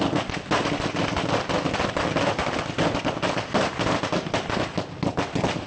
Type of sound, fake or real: real